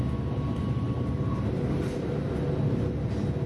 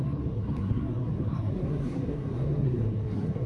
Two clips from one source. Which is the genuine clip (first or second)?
first